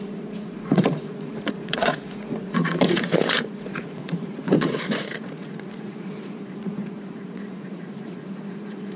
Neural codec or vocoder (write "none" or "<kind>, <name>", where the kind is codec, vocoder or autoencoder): vocoder, Vocos